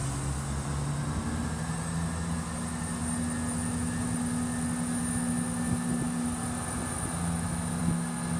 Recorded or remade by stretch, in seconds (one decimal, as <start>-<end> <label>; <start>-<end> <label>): 0.0-8.4 recorded